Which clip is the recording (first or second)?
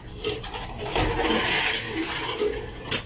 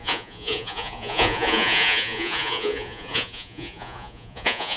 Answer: first